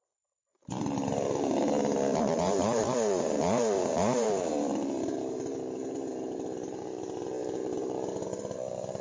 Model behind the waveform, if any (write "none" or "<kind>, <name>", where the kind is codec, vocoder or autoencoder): vocoder, BigVGAN v2